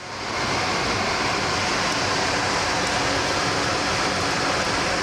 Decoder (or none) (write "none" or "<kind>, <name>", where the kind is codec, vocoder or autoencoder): none